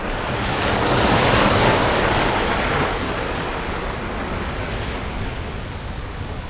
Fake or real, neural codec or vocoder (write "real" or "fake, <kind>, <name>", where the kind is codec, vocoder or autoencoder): fake, codec, DAC